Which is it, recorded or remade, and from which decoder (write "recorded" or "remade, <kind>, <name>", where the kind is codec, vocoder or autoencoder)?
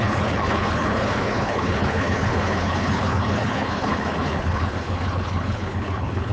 remade, codec, HILCodec